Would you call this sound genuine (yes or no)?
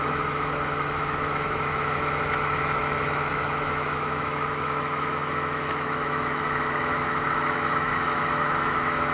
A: no